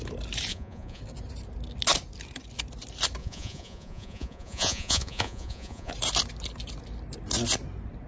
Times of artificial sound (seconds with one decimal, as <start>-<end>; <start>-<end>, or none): 0.5-1.0; 3.2-5.9